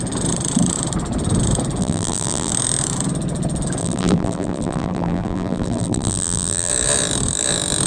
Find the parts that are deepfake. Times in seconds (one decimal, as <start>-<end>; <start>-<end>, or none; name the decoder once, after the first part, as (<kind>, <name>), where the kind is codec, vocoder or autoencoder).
1.8-2.5 (vocoder, BigVGAN v2); 3.8-6.7